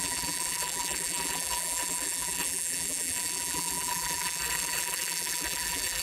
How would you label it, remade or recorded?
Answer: remade